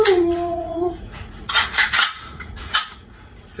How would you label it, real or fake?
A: fake